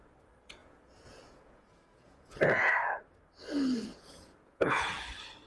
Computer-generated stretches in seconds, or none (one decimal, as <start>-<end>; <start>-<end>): 0.6-2.7; 3.9-5.0